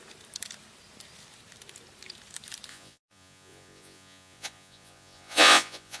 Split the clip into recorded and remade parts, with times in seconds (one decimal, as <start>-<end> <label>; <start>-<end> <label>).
0.0-2.7 recorded; 2.7-6.0 remade